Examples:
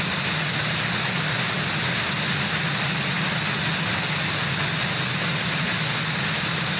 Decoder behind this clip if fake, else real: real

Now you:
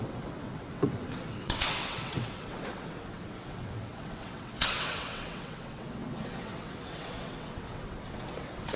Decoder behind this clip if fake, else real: fake, vocoder, WaveNeXt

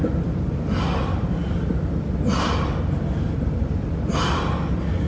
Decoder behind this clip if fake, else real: real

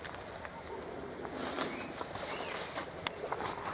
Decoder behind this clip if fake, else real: real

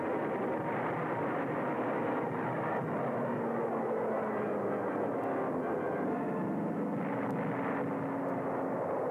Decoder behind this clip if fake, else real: real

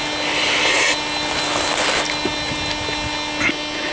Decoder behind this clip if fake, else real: real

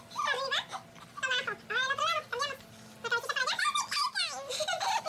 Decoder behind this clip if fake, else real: real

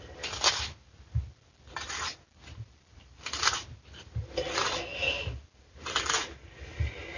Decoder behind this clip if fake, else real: real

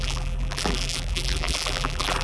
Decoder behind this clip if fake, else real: fake, vocoder, BigVGAN v2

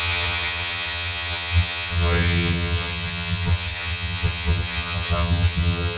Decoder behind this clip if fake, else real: fake, vocoder, HiFi-GAN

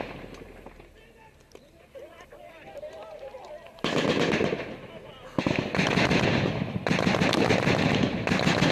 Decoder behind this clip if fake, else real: real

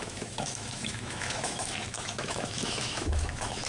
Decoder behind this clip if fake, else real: fake, autoencoder, DAC-VAE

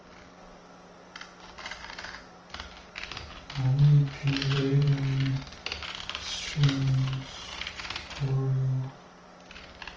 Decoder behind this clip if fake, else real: real